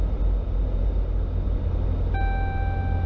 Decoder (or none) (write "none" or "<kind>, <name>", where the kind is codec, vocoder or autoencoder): none